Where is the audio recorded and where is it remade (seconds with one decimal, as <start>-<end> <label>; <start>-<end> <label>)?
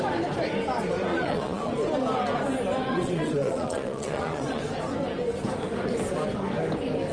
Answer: 0.0-1.1 recorded; 1.1-1.7 remade; 1.7-2.9 recorded; 2.9-4.6 remade; 4.6-7.1 recorded